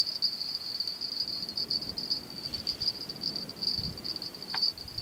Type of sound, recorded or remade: recorded